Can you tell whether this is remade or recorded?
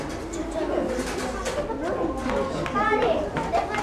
recorded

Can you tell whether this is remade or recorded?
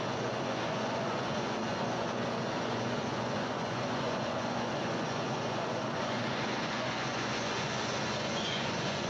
remade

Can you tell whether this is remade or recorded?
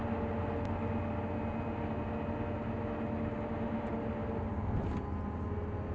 recorded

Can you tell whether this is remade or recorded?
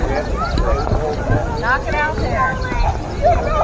recorded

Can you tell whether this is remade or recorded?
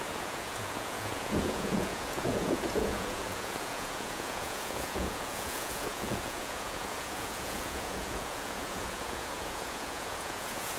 remade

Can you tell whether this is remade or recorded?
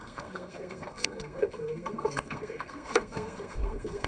remade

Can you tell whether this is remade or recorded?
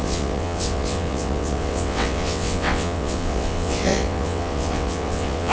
remade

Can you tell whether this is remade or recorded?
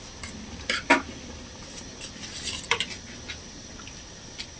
recorded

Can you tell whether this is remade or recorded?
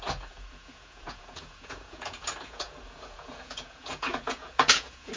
remade